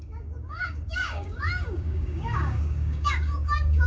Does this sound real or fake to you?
fake